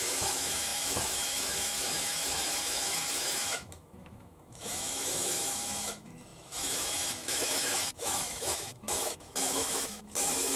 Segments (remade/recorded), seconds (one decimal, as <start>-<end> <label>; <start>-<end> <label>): 0.0-10.6 remade